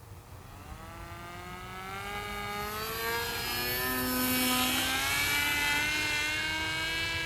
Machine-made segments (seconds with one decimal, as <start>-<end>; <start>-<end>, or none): none